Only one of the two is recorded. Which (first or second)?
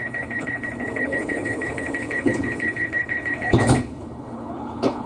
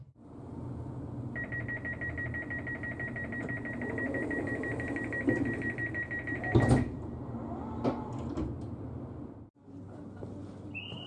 second